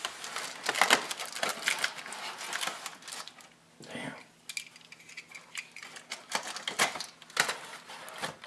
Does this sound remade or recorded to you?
recorded